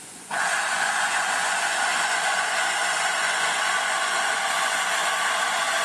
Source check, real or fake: fake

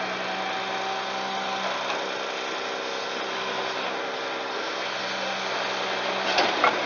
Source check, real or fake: real